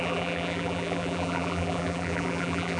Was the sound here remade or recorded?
remade